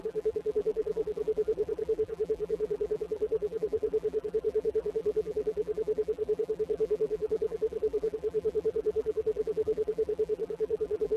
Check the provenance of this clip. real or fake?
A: fake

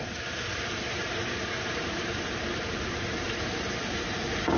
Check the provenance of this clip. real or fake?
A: fake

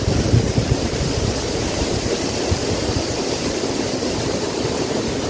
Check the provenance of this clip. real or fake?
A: fake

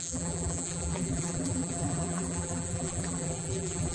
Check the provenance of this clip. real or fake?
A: fake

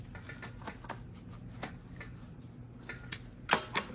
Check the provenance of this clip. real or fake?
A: real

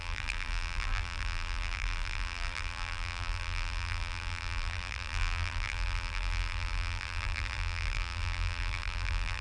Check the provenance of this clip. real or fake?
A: fake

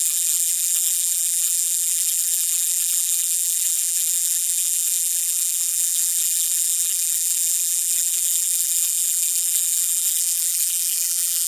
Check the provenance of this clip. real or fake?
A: fake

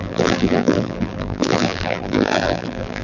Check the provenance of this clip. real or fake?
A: fake